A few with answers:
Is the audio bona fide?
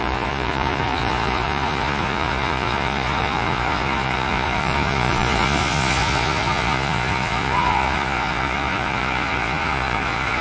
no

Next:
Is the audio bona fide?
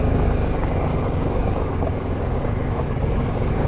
no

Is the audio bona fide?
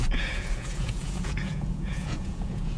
no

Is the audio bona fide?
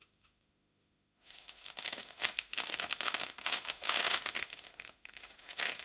no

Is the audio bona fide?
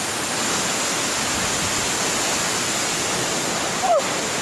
yes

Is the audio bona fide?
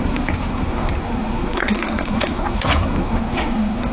no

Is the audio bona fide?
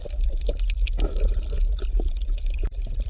yes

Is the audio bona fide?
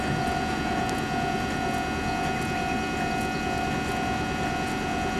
yes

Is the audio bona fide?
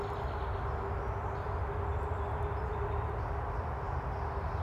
yes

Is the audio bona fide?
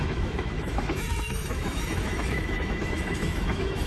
no